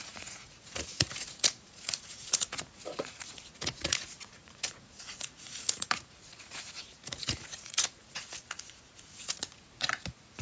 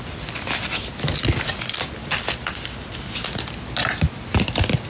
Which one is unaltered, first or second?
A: second